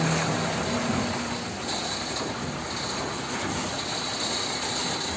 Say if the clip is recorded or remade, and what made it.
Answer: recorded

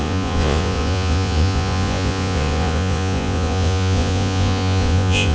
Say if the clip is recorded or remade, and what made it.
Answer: remade, vocoder, Vocos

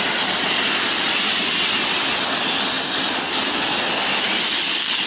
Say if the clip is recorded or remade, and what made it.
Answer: recorded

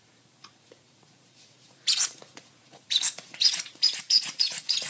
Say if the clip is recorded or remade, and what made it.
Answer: remade, vocoder, Vocos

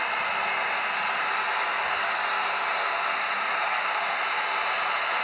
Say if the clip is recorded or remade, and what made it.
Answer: recorded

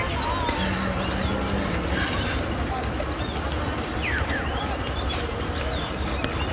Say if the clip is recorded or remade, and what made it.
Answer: recorded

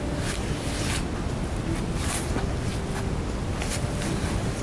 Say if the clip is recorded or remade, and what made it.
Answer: recorded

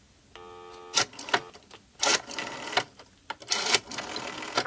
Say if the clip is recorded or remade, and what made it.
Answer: recorded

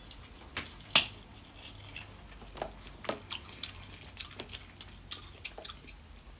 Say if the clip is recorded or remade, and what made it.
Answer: recorded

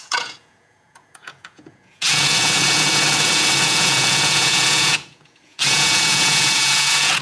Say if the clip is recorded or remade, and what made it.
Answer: remade, vocoder, Vocos